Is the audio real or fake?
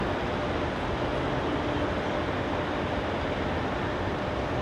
real